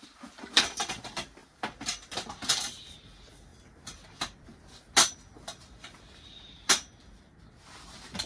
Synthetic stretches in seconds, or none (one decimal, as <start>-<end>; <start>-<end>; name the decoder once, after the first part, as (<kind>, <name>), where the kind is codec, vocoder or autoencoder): 0.0-1.4 (vocoder, BigVGAN v2); 2.9-3.5; 4.1-4.5; 7.8-8.3

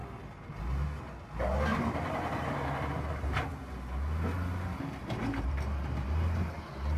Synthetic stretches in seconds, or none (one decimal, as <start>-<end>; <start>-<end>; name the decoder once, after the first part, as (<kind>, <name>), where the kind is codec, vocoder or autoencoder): 1.7-3.5 (vocoder, BigVGAN v2); 5.0-6.6

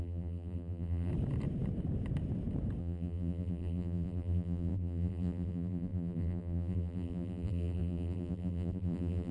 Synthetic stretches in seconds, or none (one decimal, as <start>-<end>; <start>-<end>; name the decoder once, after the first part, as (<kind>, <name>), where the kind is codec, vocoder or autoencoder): 0.0-1.1 (vocoder, BigVGAN v2); 2.8-9.3